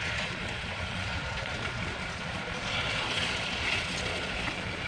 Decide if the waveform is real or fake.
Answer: fake